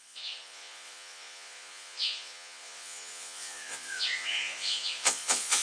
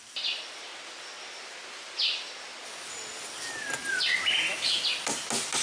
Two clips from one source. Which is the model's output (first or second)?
first